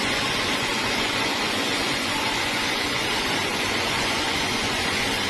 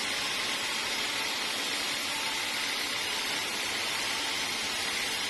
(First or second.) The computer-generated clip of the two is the first